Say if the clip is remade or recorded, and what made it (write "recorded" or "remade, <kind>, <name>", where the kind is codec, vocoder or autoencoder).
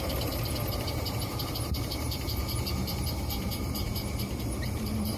remade, vocoder, BigVGAN v2